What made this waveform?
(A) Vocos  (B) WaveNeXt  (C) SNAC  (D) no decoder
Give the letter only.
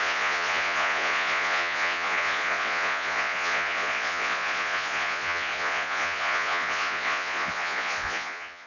A